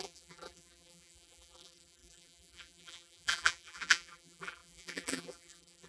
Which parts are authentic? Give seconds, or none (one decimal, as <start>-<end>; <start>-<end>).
none